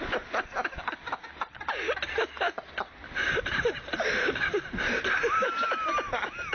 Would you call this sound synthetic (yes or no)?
no